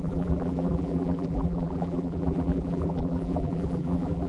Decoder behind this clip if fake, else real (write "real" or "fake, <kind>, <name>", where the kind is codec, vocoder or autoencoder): fake, vocoder, BigVGAN v2